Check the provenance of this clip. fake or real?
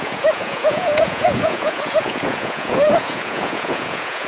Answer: fake